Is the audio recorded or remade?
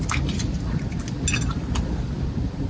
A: recorded